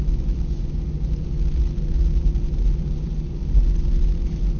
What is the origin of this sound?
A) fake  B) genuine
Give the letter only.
B